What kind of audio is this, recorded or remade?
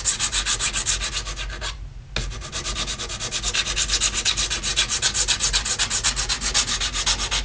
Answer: recorded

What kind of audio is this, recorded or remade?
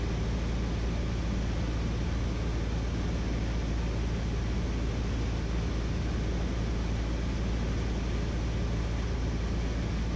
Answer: recorded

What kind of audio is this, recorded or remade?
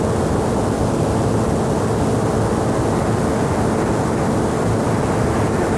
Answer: recorded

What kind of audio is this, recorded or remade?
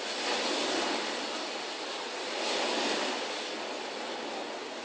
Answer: recorded